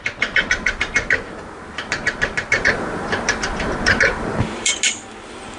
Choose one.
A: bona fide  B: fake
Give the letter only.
A